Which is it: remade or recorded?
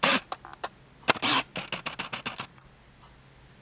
recorded